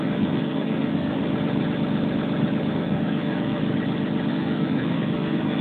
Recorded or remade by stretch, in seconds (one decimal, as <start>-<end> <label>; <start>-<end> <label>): 0.0-1.2 remade; 1.2-2.7 recorded; 2.7-3.6 remade; 3.6-4.3 recorded; 4.3-5.6 remade